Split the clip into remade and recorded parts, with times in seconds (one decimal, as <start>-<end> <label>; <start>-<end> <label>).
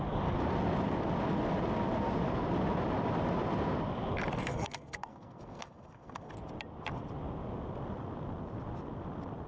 0.0-4.5 recorded; 4.5-6.3 remade; 6.3-9.5 recorded